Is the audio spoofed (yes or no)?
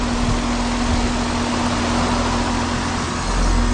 no